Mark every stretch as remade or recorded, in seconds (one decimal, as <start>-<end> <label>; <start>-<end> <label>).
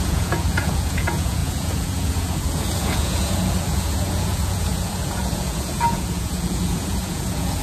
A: 0.0-7.6 remade